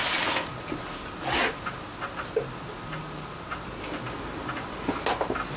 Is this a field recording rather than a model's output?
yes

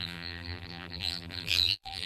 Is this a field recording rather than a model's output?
no